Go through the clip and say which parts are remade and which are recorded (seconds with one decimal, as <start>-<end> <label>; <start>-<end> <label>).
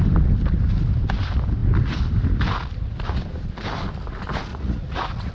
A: 0.0-4.5 recorded; 4.5-5.3 remade